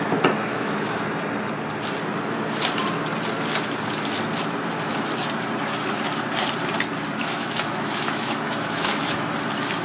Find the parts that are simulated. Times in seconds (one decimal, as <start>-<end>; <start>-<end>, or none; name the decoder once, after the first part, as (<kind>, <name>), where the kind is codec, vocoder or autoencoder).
0.5-1.0 (autoencoder, DAC-VAE); 7.2-9.3

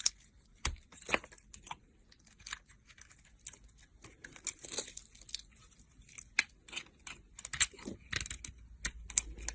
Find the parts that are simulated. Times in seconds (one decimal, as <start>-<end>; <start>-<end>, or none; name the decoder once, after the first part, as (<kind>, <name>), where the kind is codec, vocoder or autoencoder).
none